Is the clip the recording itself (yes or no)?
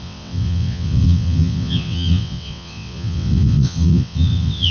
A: no